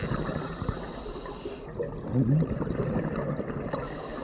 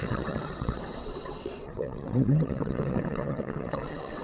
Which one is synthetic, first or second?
second